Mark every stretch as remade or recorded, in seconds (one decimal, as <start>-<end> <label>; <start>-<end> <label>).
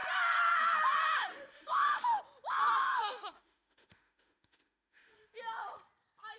0.0-1.3 recorded; 1.3-2.2 remade; 2.2-2.8 recorded; 2.8-5.4 remade; 5.4-6.4 recorded